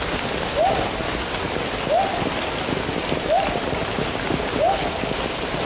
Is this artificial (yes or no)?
no